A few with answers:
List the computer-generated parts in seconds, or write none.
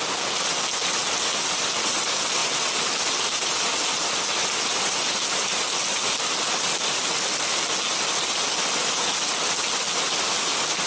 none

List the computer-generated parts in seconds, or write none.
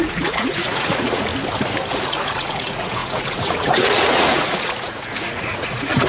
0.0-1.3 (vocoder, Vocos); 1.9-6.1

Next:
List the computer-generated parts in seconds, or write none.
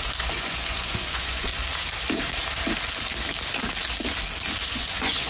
0.0-1.5 (vocoder, Vocos); 4.7-5.3